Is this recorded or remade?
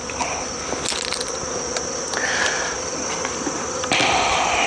recorded